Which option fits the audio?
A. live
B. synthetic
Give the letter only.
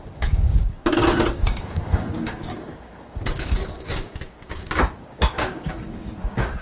B